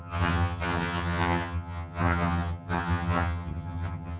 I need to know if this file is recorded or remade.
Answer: remade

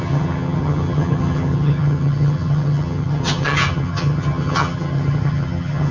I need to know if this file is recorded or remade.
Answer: remade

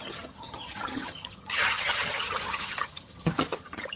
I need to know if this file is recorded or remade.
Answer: remade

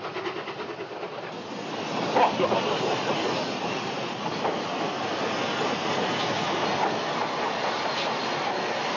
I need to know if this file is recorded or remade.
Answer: recorded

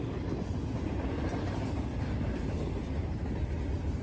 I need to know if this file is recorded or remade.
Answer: recorded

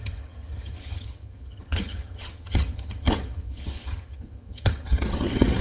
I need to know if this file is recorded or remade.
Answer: remade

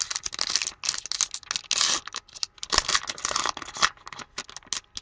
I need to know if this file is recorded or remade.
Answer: recorded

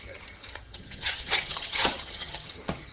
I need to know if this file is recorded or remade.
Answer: remade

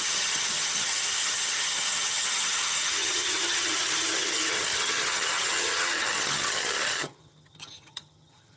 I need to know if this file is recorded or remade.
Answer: remade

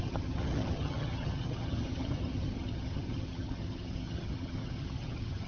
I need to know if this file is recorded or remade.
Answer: remade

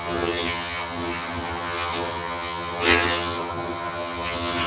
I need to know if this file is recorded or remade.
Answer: remade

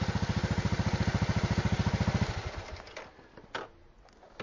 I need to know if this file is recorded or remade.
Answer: recorded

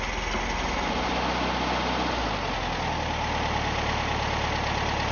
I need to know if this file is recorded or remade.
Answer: recorded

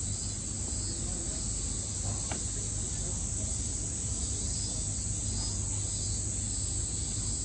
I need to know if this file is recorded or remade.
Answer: recorded